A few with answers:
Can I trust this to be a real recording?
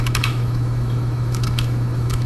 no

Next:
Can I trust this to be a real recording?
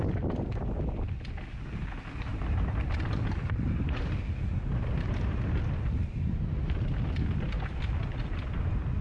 yes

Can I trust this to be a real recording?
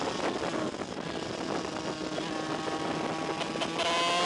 yes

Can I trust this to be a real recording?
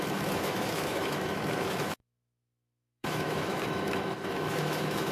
no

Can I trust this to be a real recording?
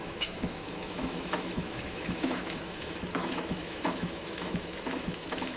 no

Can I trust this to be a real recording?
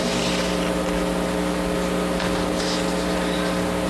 yes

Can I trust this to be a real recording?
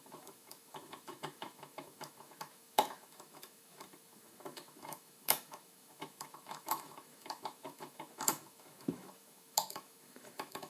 no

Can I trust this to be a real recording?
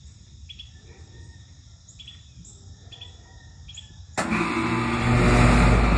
yes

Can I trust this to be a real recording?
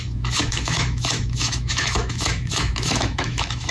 no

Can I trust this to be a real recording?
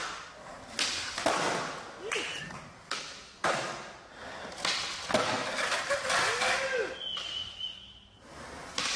yes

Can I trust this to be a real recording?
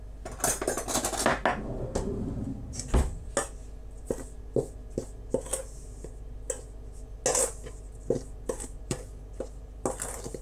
yes